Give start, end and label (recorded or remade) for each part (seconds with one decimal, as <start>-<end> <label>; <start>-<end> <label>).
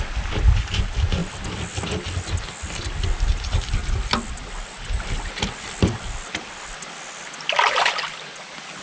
0.0-8.8 recorded